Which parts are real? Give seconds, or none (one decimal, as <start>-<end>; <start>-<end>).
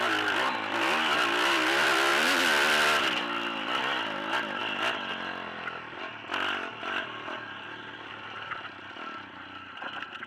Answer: 0.0-10.3